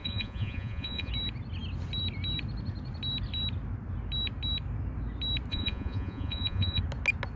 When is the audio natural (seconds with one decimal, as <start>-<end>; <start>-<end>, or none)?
1.1-5.5; 6.8-7.4